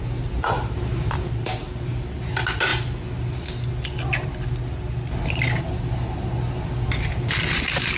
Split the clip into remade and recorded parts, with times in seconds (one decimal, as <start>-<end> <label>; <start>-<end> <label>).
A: 0.0-2.7 remade; 2.7-7.1 recorded; 7.1-8.0 remade